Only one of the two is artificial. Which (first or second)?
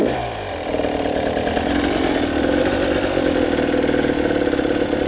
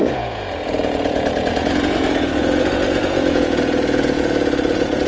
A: second